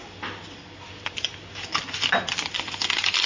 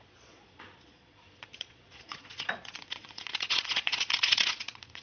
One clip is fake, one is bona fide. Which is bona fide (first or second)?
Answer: first